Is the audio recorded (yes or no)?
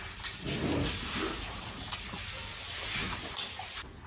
yes